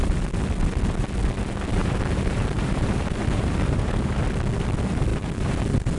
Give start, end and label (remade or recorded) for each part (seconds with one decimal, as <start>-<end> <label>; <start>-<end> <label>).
0.0-1.8 recorded; 1.8-4.2 remade; 4.2-5.1 recorded; 5.1-5.6 remade; 5.6-6.0 recorded